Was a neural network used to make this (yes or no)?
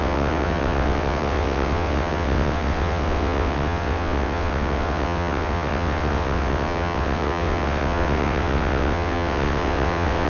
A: yes